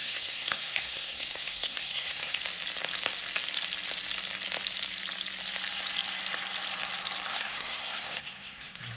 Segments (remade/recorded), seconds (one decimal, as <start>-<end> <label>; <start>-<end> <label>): 0.0-2.4 remade; 2.4-7.3 recorded; 7.3-9.0 remade